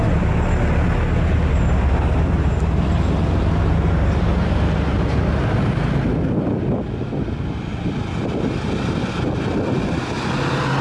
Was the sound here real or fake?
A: real